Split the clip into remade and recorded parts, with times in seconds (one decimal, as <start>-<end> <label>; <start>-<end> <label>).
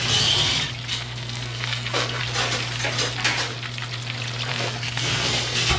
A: 0.0-0.9 recorded; 0.9-2.2 remade; 2.2-4.5 recorded; 4.5-5.8 remade